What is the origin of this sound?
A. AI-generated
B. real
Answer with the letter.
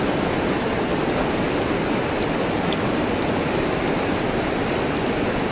B